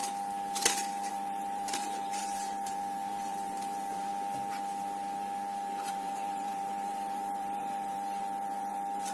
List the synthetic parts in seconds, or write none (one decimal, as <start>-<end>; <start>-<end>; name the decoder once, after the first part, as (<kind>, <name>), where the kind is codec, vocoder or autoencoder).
1.1-4.1 (vocoder, BigVGAN v2); 5.9-9.1